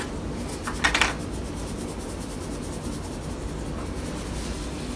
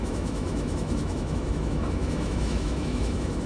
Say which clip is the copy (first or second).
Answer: second